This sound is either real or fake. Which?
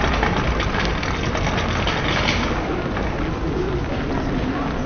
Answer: real